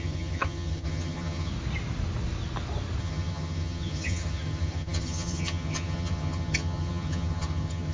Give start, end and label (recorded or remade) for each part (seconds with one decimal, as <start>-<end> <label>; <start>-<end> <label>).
0.0-1.5 remade; 1.5-3.0 recorded; 3.0-7.9 remade